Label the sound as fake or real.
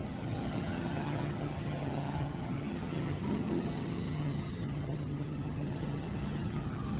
fake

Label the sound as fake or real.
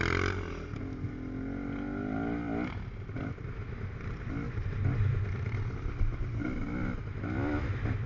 real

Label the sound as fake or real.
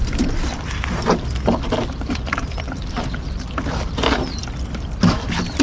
real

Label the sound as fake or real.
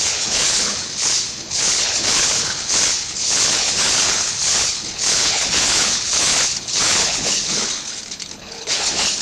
fake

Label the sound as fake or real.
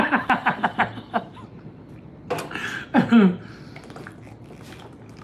real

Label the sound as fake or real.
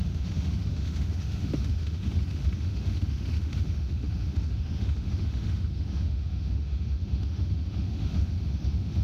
fake